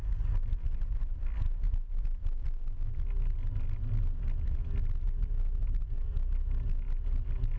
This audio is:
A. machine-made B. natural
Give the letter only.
B